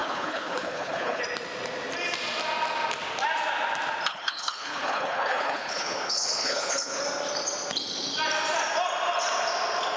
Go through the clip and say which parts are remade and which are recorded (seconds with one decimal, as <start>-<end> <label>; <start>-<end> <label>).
0.0-1.2 remade; 1.2-4.1 recorded; 4.1-7.0 remade; 7.0-10.0 recorded